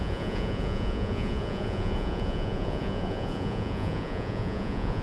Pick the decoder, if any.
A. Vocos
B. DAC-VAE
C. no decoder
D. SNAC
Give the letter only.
A